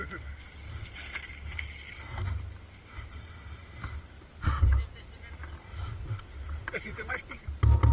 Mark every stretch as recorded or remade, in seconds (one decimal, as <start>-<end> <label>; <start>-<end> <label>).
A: 0.0-5.7 recorded; 5.7-7.4 remade; 7.4-7.9 recorded

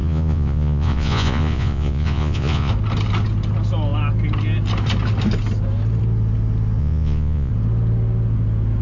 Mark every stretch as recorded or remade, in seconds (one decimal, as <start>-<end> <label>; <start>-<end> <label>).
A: 0.0-2.7 remade; 2.7-6.8 recorded; 6.8-7.5 remade; 7.5-8.8 recorded

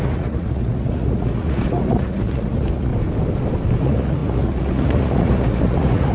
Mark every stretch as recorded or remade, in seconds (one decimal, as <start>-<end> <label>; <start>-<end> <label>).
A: 0.0-2.9 remade; 2.9-3.8 recorded; 3.8-6.1 remade

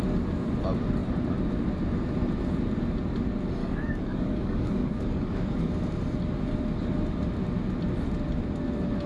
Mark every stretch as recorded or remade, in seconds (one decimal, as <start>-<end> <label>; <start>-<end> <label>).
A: 0.0-3.6 recorded; 3.6-5.7 remade; 5.7-9.1 recorded

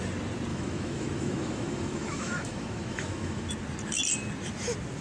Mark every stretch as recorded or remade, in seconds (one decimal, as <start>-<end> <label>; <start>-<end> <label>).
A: 0.0-0.5 recorded; 0.5-3.5 remade; 3.5-5.0 recorded

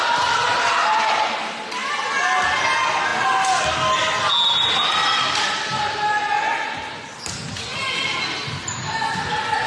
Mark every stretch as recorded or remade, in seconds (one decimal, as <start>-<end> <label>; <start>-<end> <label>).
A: 0.0-9.7 recorded

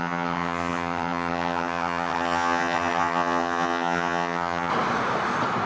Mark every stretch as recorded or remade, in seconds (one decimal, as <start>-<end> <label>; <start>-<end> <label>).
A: 0.0-4.7 remade; 4.7-5.7 recorded